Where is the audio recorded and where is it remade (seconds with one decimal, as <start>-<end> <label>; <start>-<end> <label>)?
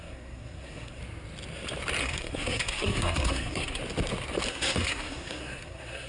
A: 0.0-1.0 remade; 1.0-2.0 recorded; 2.0-3.8 remade; 3.8-4.5 recorded; 4.5-6.1 remade